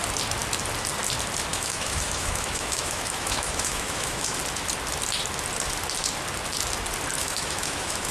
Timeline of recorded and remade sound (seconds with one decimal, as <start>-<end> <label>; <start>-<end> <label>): 0.0-1.5 recorded; 1.5-4.4 remade; 4.4-7.2 recorded; 7.2-8.1 remade